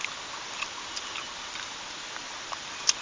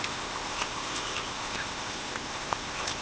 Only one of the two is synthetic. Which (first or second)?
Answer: second